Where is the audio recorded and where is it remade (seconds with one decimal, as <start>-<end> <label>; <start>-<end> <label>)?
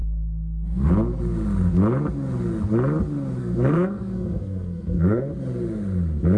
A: 0.0-0.9 remade; 0.9-3.4 recorded; 3.4-5.3 remade; 5.3-6.4 recorded